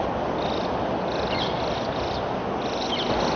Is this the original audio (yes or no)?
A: yes